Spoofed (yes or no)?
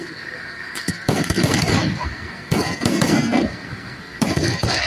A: yes